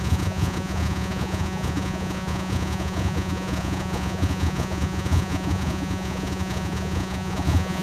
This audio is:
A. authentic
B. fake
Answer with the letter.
B